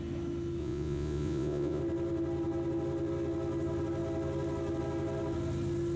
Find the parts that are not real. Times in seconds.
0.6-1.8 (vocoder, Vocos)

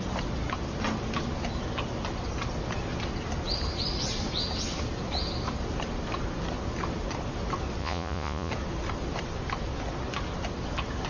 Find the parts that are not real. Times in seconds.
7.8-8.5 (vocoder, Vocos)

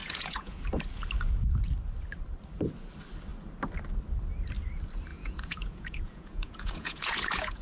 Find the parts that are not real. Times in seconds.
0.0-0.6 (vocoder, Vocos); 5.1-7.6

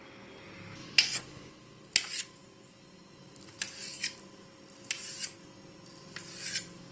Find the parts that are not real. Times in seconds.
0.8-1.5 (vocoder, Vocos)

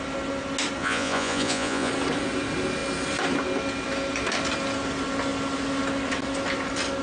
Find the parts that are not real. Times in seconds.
0.8-1.9 (vocoder, Vocos)

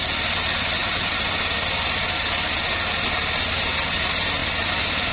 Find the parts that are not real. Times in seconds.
none